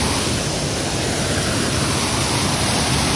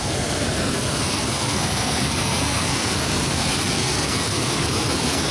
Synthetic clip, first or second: second